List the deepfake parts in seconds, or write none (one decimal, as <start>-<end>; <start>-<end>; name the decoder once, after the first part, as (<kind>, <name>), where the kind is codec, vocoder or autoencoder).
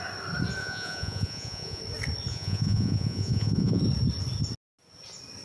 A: 0.6-1.8 (vocoder, Vocos); 2.3-3.8